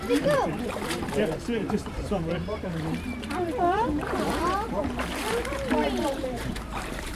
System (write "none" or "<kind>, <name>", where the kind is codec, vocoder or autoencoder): vocoder, BigVGAN v2